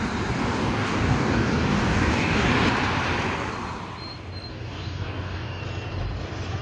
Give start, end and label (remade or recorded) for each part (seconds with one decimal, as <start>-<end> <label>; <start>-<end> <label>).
0.0-0.4 recorded; 0.4-2.5 remade; 2.5-4.5 recorded; 4.5-5.6 remade; 5.6-6.6 recorded